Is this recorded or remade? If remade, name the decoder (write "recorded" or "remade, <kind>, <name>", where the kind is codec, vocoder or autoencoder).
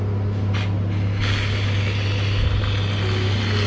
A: recorded